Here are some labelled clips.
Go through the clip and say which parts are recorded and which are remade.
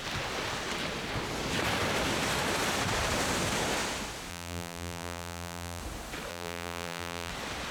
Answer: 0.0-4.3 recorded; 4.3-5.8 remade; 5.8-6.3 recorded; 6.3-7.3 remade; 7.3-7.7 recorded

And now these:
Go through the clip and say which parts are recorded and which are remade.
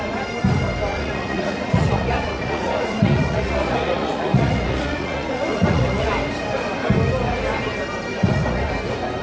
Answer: 0.0-0.9 recorded; 0.9-6.1 remade; 6.1-8.1 recorded; 8.1-8.7 remade; 8.7-9.2 recorded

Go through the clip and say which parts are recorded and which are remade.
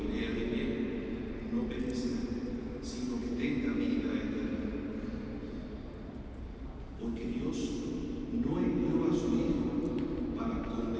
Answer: 0.0-11.0 recorded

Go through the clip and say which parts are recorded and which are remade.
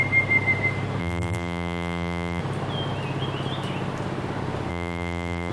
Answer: 0.0-1.0 recorded; 1.0-2.4 remade; 2.4-4.7 recorded; 4.7-5.5 remade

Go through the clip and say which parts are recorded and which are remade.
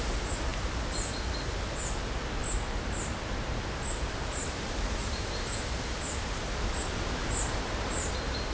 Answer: 0.0-2.4 recorded; 2.4-6.4 remade; 6.4-7.2 recorded; 7.2-8.1 remade; 8.1-8.5 recorded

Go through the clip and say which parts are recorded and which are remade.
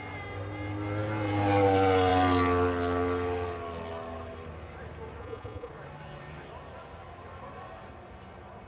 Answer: 0.0-5.2 recorded; 5.2-5.7 remade; 5.7-8.7 recorded